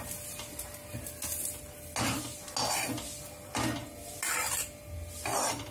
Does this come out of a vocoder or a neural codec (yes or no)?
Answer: no